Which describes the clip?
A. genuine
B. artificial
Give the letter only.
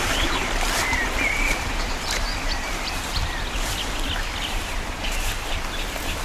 B